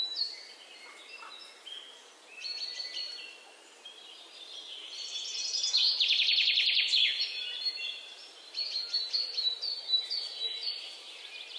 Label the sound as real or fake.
fake